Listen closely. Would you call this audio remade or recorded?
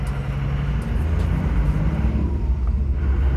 recorded